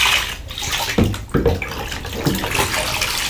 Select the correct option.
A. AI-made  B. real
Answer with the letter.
B